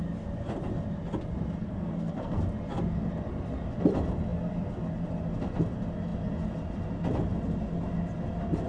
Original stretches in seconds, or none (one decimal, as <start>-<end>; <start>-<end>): 0.0-1.6; 2.4-8.7